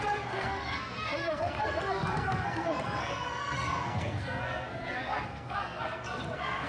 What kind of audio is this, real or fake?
fake